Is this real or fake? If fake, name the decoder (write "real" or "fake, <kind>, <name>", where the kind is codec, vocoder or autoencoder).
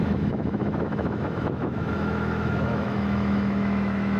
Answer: fake, autoencoder, DAC-VAE